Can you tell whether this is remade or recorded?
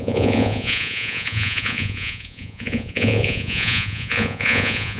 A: remade